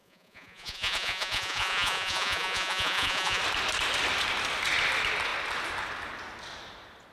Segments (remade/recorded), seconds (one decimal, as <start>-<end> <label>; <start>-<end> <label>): 0.0-3.4 remade; 3.4-7.1 recorded